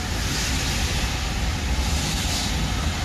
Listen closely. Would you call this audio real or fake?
real